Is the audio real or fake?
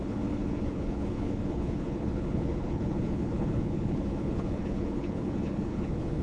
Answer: fake